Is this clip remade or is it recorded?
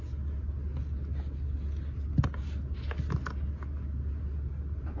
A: recorded